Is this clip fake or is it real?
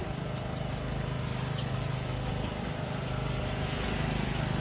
real